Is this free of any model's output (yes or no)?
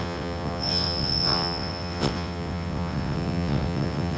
no